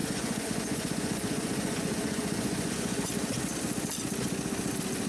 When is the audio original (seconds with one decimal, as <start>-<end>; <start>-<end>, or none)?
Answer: 3.1-5.1